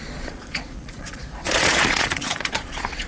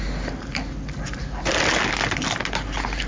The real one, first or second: second